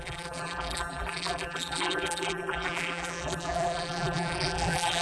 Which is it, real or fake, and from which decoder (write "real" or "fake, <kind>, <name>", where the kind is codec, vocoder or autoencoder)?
fake, vocoder, BigVGAN v2